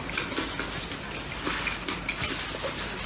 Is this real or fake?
real